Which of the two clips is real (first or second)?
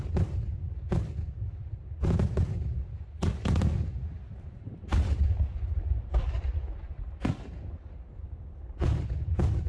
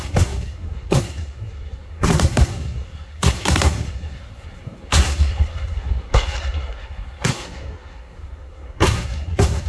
first